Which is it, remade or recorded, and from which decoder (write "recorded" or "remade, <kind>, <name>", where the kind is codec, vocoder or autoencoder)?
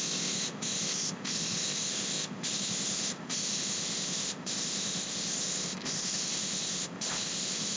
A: remade, codec, ZipCodec